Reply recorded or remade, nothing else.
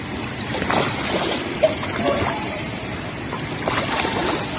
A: remade